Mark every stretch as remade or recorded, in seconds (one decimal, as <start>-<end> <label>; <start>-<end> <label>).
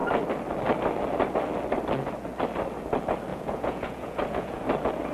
0.0-3.3 recorded; 3.3-4.6 remade; 4.6-5.1 recorded